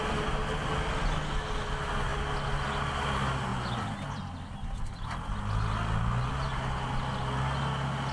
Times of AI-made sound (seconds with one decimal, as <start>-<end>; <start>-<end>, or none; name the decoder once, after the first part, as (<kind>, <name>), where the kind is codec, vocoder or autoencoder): none